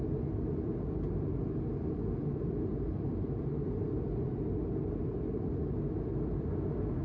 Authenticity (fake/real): real